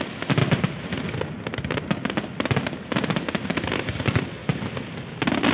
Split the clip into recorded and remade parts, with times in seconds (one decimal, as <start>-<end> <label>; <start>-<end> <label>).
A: 0.0-5.5 recorded